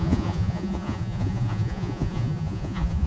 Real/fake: fake